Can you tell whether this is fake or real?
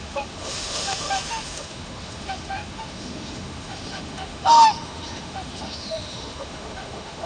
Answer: fake